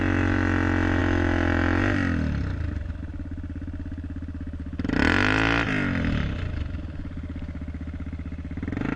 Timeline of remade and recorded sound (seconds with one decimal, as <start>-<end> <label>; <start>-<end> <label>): 0.0-9.0 recorded

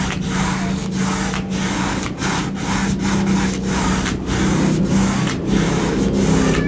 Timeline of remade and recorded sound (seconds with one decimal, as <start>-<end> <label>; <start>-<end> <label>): 0.0-6.7 recorded

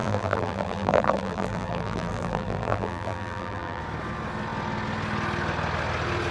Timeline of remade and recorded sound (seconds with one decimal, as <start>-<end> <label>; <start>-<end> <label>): 0.0-3.8 remade; 3.8-6.3 recorded